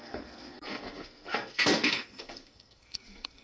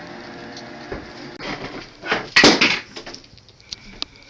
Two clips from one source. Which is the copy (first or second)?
first